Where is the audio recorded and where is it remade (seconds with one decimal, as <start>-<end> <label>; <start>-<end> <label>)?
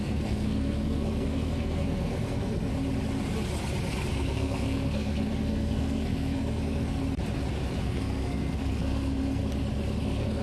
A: 0.0-2.7 remade; 2.7-4.1 recorded; 4.1-7.0 remade; 7.0-7.8 recorded; 7.8-9.4 remade; 9.4-10.0 recorded; 10.0-10.4 remade